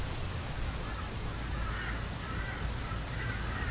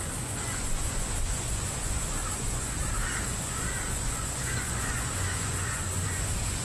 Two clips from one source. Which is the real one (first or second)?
first